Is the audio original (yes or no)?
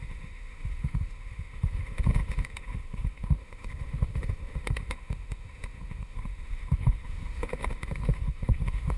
no